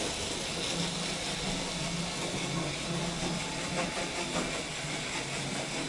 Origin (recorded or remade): recorded